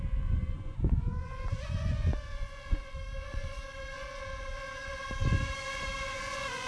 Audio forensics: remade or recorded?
remade